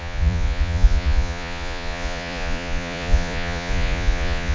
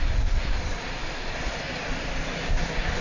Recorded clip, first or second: second